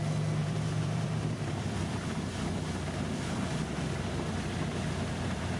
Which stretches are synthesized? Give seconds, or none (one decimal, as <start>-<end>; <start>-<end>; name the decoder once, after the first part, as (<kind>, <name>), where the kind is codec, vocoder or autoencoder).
0.4-2.2 (vocoder, BigVGAN v2)